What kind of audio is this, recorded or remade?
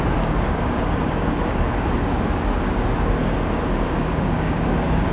remade